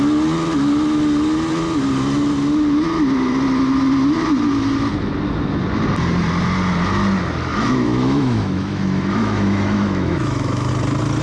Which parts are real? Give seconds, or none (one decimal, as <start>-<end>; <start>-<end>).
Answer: 0.0-7.5; 10.7-11.2